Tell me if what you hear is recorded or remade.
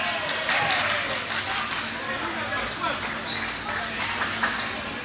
recorded